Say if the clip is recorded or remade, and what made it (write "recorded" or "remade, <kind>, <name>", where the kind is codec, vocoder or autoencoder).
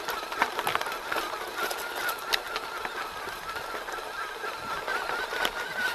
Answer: recorded